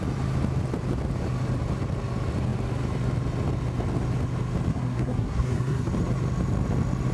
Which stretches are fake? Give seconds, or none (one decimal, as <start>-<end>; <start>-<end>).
4.7-5.9